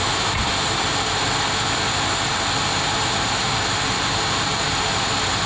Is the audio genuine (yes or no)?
yes